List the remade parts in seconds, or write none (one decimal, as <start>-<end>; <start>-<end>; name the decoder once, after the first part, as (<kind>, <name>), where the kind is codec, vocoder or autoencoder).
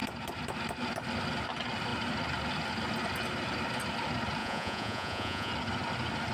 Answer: 4.4-5.5 (vocoder, Vocos)